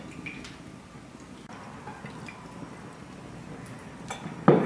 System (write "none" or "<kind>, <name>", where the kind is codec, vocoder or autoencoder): none